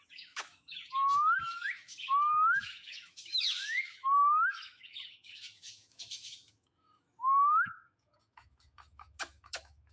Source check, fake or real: fake